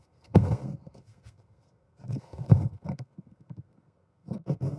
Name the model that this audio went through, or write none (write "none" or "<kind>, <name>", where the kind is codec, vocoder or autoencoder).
codec, SNAC